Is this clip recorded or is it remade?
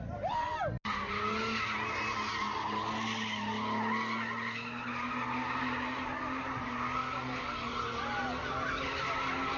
recorded